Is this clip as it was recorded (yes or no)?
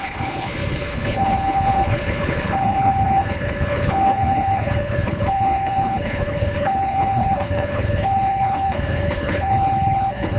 no